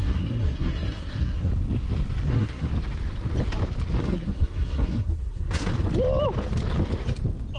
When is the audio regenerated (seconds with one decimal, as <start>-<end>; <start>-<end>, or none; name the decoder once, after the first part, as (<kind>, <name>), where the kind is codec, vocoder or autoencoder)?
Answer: 0.0-1.5 (codec, SNAC); 2.3-2.7; 4.0-5.7

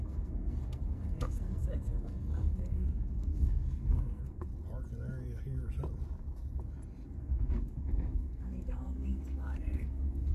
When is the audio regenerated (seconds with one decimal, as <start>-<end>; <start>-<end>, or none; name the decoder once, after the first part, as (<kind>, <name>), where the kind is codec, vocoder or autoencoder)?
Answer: 0.0-4.5 (codec, SNAC); 7.2-10.3

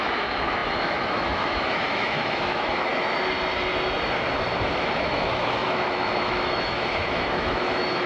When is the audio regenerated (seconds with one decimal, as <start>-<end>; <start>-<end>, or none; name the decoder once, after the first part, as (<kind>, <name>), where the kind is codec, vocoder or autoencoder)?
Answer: 0.0-2.9 (autoencoder, DAC-VAE); 4.7-8.1

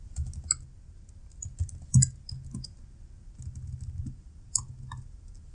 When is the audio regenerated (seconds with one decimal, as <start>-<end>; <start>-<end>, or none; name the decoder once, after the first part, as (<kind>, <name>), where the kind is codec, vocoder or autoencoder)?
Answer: none